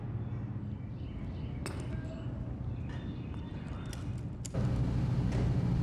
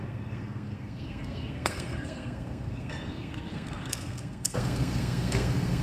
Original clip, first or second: first